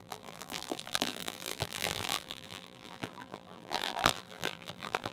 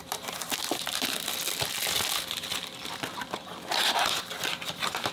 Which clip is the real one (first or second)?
second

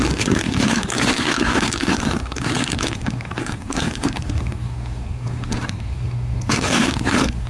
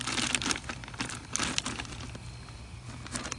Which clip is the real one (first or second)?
second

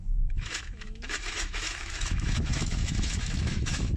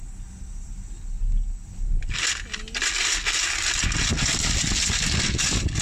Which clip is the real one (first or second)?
second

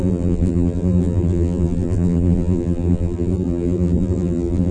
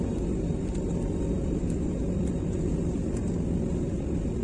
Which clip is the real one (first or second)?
second